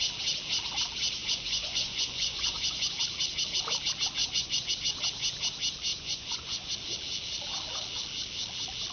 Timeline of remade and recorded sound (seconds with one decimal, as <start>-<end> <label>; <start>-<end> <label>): 0.0-1.2 recorded; 1.2-2.9 remade; 2.9-4.2 recorded; 4.2-4.7 remade; 4.7-5.9 recorded; 5.9-6.7 remade; 6.7-8.9 recorded